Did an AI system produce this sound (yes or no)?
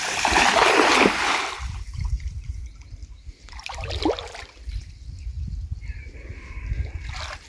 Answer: yes